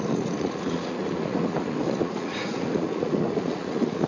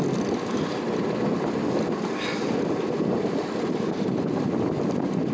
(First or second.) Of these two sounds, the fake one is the first